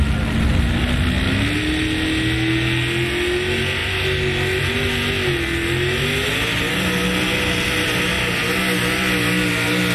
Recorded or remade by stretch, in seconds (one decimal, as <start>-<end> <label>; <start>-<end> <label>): 0.0-9.9 recorded